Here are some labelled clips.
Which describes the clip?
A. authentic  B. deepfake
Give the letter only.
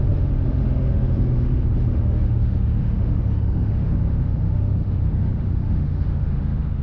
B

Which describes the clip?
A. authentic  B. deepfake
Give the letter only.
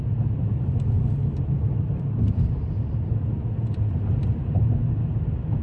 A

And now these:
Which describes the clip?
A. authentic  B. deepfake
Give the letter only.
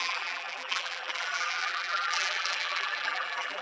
B